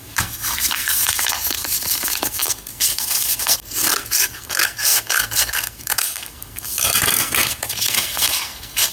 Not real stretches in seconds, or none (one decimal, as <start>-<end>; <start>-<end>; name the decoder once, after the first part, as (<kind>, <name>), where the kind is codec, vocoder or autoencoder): 0.0-8.9 (codec, SNAC)